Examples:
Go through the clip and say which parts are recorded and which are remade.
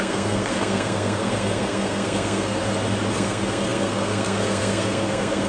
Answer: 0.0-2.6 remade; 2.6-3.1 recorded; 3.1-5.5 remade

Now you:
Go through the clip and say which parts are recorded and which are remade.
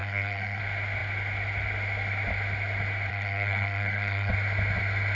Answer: 0.0-0.6 remade; 0.6-3.1 recorded; 3.1-4.3 remade; 4.3-5.1 recorded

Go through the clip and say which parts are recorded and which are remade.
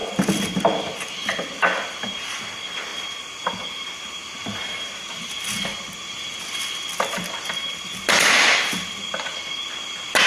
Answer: 0.0-10.3 recorded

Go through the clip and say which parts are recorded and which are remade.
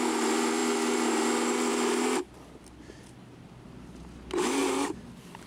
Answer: 0.0-5.5 recorded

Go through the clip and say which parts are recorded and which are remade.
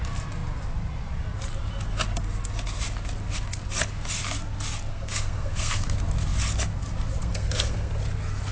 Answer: 0.0-4.9 recorded; 4.9-5.8 remade; 5.8-7.2 recorded; 7.2-7.9 remade; 7.9-8.5 recorded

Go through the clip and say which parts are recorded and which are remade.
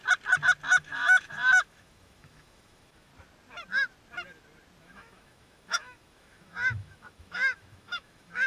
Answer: 0.0-0.7 recorded; 0.7-3.1 remade; 3.1-4.8 recorded; 4.8-8.5 remade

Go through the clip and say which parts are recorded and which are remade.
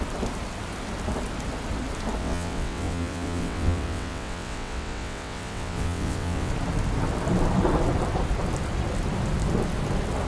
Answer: 0.0-2.2 recorded; 2.2-6.5 remade; 6.5-10.3 recorded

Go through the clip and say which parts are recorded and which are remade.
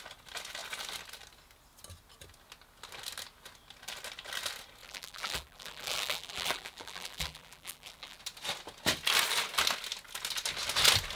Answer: 0.0-4.8 recorded; 4.8-8.2 remade; 8.2-11.2 recorded